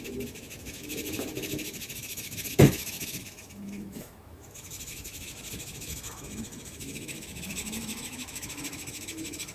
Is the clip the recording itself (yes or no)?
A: no